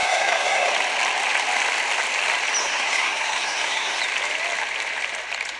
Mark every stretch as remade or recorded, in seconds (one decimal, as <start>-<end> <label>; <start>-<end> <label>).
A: 0.0-0.7 remade; 0.7-2.6 recorded; 2.6-4.0 remade; 4.0-5.6 recorded